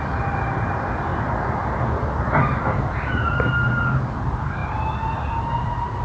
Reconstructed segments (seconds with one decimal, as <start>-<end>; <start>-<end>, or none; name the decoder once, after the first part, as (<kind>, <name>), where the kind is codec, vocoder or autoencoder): 0.0-1.1 (vocoder, BigVGAN v2); 2.8-4.6; 5.4-6.0